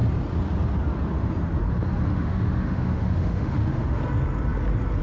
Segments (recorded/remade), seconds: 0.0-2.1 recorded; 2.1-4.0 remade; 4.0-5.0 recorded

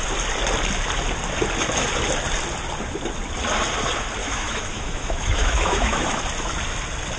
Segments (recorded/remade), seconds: 0.0-4.2 recorded; 4.2-6.2 remade; 6.2-7.2 recorded

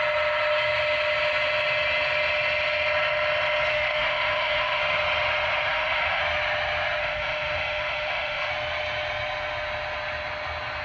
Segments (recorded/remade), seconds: 0.0-3.7 recorded; 3.7-4.8 remade; 4.8-5.7 recorded; 5.7-6.2 remade; 6.2-7.0 recorded; 7.0-8.5 remade; 8.5-10.8 recorded

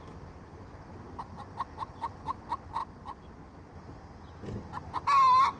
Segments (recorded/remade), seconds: 0.0-5.6 recorded

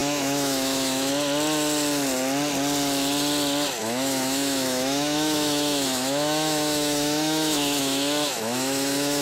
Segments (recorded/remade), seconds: 0.0-1.1 remade; 1.1-3.8 recorded; 3.8-9.2 remade

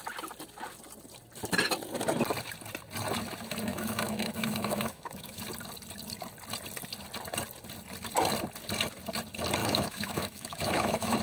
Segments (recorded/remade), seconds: 0.0-3.7 recorded; 3.7-5.4 remade; 5.4-9.6 recorded; 9.6-11.2 remade

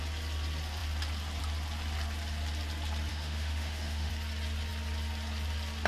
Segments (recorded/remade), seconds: 0.0-3.1 recorded; 3.1-4.1 remade; 4.1-5.9 recorded